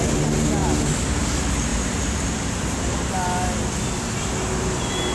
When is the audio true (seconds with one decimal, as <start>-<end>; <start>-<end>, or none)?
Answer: 0.0-5.1